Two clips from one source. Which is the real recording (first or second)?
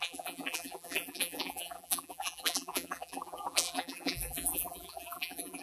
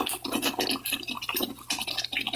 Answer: second